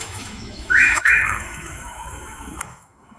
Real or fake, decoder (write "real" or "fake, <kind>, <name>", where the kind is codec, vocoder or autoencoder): fake, autoencoder, DAC-VAE